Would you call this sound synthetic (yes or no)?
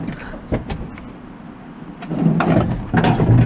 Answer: no